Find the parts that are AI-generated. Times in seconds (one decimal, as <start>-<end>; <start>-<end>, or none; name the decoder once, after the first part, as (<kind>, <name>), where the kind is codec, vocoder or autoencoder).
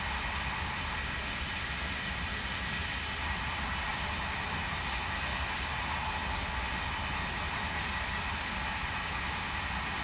none